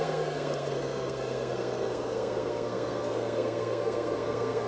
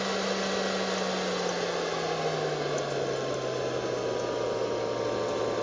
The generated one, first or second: first